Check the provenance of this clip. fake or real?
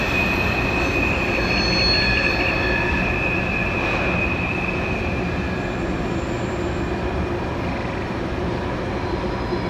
real